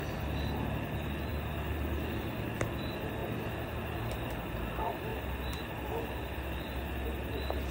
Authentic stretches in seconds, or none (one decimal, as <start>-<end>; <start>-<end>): 0.0-7.7